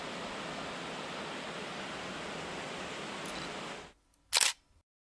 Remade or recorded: recorded